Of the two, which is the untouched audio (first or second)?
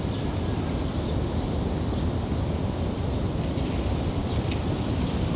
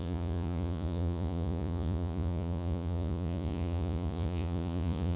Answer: first